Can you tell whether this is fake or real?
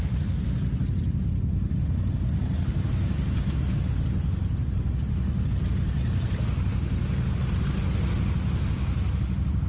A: real